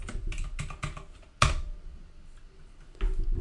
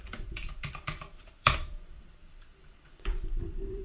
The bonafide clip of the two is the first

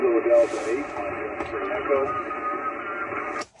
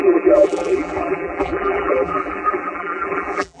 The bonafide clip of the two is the first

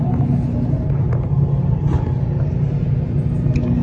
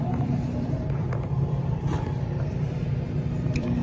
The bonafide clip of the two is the first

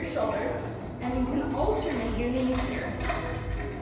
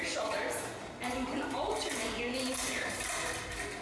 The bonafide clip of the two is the first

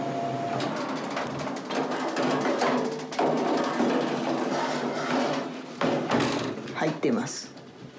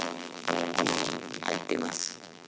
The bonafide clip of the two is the first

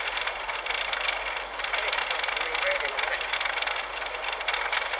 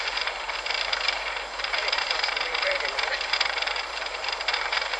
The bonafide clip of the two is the first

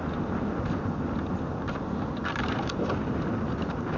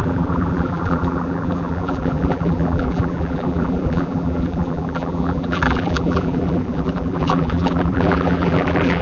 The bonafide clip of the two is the first